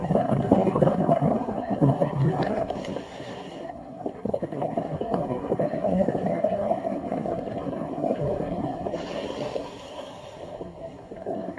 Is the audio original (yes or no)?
no